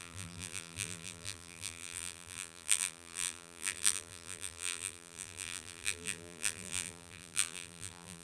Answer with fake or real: fake